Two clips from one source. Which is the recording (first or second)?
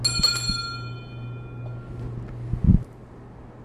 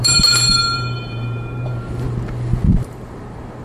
first